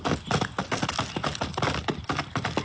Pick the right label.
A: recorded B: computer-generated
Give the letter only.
A